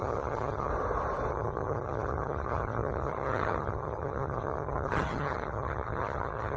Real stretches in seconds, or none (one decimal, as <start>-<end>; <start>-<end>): 0.7-1.3